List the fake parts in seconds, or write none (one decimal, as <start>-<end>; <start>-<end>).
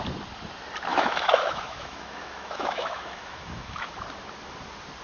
0.9-3.9